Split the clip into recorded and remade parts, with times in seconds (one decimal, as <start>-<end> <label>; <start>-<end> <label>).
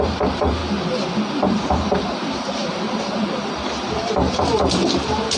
0.0-0.6 remade; 0.6-1.3 recorded; 1.3-5.4 remade